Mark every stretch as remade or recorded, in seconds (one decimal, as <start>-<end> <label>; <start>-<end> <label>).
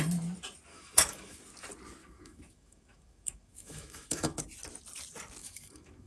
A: 0.0-0.7 recorded; 0.7-1.4 remade; 1.4-2.0 recorded; 2.0-4.4 remade; 4.4-5.4 recorded; 5.4-6.1 remade